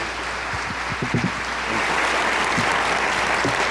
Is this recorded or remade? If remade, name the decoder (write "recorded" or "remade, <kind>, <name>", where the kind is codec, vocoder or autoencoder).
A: recorded